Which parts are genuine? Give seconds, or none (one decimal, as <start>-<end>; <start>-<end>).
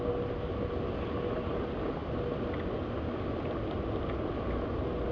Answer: 0.0-5.1